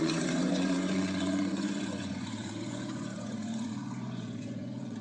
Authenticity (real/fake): fake